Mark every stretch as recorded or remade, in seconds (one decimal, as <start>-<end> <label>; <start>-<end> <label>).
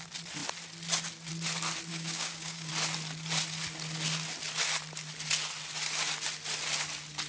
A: 0.0-1.9 recorded; 1.9-2.7 remade; 2.7-7.3 recorded